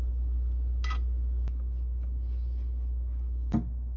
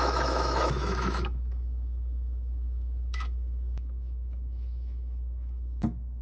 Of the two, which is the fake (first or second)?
second